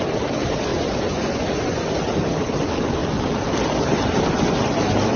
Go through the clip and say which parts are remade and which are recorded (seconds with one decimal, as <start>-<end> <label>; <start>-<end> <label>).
0.0-0.7 recorded; 0.7-1.9 remade; 1.9-5.2 recorded